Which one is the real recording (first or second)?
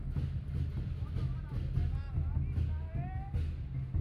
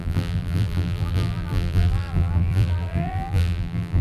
first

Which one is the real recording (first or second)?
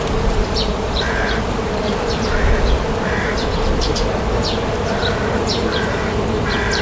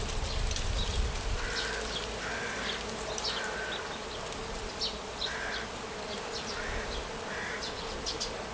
second